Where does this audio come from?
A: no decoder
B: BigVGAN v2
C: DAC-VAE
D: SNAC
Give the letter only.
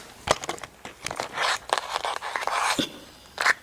A